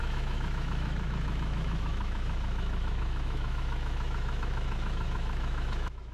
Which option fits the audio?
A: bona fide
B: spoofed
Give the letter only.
B